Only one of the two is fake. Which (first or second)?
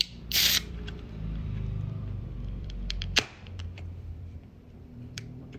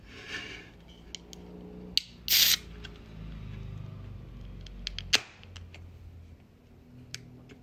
first